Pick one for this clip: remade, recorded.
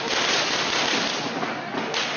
recorded